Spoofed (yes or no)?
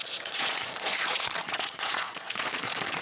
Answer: yes